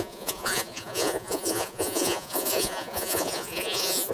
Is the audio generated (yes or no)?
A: yes